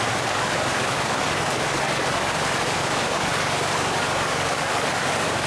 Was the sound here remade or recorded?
remade